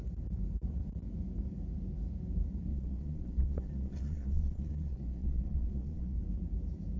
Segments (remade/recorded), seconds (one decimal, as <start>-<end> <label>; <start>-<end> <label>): 0.0-2.7 recorded; 2.7-6.2 remade; 6.2-7.0 recorded